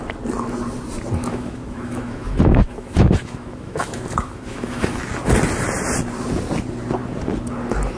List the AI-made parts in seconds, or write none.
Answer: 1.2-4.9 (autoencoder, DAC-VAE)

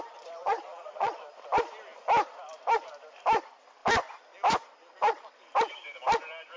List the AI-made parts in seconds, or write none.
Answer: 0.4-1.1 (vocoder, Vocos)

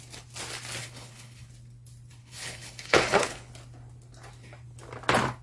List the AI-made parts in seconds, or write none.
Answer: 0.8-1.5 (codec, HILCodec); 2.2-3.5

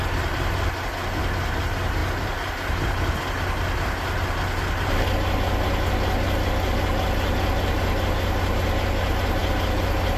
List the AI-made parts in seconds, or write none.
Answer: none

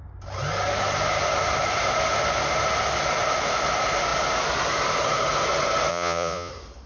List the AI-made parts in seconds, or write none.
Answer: 5.9-6.5 (vocoder, Vocos)

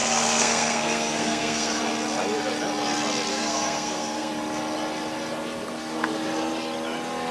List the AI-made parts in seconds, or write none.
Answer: 0.0-1.8 (codec, SNAC); 3.3-4.3